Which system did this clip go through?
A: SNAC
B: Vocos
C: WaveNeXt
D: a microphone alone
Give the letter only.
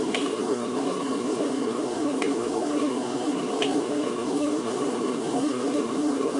A